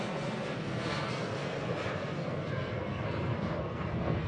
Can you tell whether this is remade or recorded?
remade